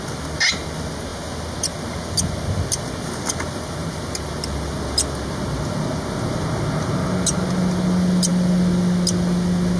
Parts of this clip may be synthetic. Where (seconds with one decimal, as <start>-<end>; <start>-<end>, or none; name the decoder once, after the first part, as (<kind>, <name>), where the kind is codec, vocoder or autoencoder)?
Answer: none